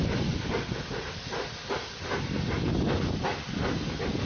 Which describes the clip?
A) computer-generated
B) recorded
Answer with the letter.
B